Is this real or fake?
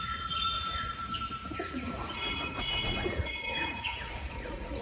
fake